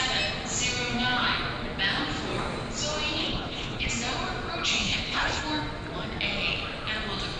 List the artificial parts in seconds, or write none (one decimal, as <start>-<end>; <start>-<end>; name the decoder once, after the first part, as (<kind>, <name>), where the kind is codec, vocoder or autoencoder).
3.2-3.9 (codec, HILCodec); 4.8-5.4